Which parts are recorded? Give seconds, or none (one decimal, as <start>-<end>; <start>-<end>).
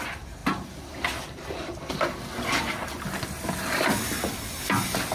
0.0-5.1